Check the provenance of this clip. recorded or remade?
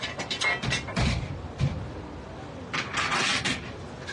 recorded